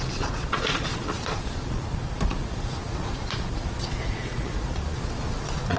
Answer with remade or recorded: remade